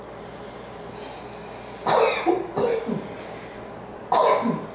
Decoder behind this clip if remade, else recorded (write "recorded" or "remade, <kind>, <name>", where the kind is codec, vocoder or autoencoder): recorded